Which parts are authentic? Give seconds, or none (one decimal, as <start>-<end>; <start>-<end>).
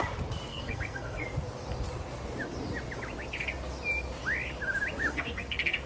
0.0-0.5; 1.3-5.1